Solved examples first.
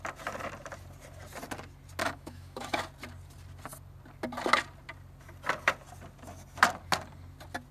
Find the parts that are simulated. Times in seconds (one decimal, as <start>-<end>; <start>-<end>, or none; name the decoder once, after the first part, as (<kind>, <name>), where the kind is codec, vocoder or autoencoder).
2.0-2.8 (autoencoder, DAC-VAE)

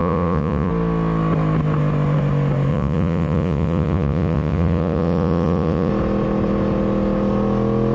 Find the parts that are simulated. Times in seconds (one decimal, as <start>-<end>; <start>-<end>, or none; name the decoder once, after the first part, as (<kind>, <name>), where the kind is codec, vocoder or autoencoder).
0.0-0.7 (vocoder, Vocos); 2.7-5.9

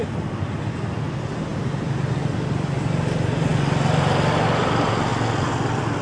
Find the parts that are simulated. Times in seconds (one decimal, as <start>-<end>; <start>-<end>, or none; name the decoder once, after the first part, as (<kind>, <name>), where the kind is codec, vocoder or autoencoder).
none

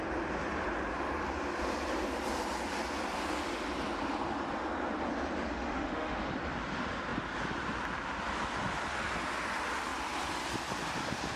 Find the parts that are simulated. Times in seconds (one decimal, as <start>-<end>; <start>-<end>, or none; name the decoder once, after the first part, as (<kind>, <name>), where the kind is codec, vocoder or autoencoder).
5.5-6.3 (autoencoder, DAC-VAE)